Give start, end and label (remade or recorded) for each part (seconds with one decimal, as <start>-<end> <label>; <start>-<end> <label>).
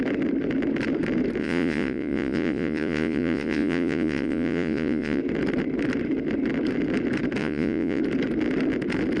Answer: 0.0-1.4 recorded; 1.4-5.2 remade; 5.2-7.4 recorded; 7.4-8.0 remade; 8.0-9.2 recorded